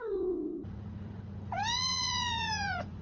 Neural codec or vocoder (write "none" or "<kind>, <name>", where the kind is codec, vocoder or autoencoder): vocoder, Vocos